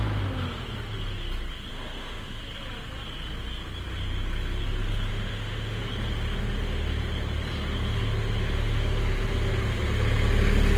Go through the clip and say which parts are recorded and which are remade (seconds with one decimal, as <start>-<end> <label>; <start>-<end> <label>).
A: 0.0-1.7 recorded; 1.7-2.4 remade; 2.4-5.1 recorded; 5.1-5.8 remade; 5.8-10.8 recorded